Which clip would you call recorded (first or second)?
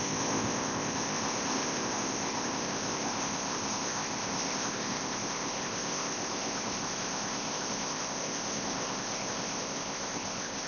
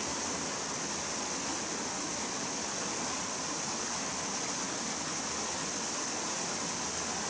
second